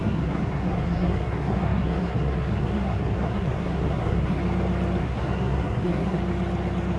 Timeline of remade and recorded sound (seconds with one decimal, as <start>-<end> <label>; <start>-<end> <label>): 0.0-4.4 remade; 4.4-5.0 recorded; 5.0-6.2 remade; 6.2-7.0 recorded